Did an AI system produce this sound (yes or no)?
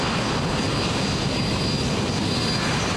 no